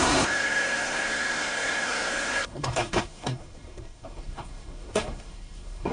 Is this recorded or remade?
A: remade